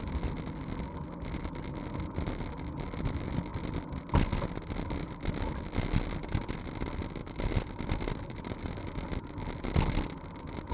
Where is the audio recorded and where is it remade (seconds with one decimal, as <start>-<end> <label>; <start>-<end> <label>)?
0.0-7.2 recorded; 7.2-9.1 remade; 9.1-10.7 recorded